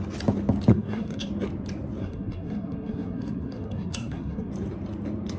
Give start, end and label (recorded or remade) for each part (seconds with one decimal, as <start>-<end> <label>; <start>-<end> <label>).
0.0-0.7 recorded; 0.7-1.3 remade; 1.3-2.0 recorded; 2.0-4.5 remade; 4.5-5.4 recorded

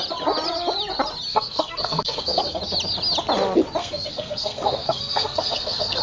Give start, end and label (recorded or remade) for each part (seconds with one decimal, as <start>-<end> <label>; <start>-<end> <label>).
0.0-1.3 recorded; 1.3-2.6 remade; 2.6-3.8 recorded; 3.8-6.0 remade

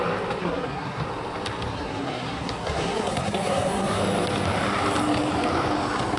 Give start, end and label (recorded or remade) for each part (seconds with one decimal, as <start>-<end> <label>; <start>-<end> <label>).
0.0-0.4 recorded; 0.4-1.0 remade; 1.0-1.7 recorded; 1.7-4.0 remade; 4.0-6.2 recorded

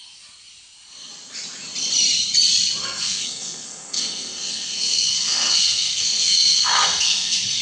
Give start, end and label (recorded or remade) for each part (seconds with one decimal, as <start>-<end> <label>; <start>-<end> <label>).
0.0-2.8 recorded; 2.8-7.6 remade

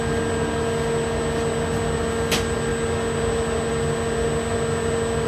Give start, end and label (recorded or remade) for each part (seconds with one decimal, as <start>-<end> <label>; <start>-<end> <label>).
0.0-5.3 recorded

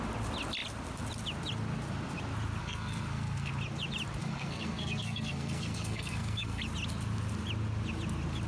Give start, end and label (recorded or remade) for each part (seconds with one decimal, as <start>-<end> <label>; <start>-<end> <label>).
0.0-2.6 recorded; 2.6-3.5 remade; 3.5-4.2 recorded; 4.2-6.6 remade; 6.6-8.5 recorded

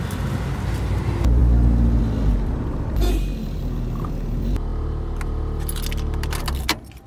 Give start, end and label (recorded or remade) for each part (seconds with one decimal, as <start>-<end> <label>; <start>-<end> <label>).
0.0-7.1 recorded